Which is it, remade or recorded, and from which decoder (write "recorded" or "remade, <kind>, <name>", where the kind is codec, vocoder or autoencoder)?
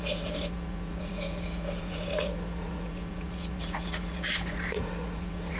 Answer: remade, vocoder, Vocos